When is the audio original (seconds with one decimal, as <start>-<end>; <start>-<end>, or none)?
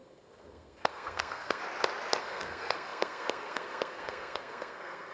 1.6-2.2